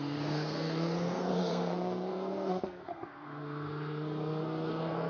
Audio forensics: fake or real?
fake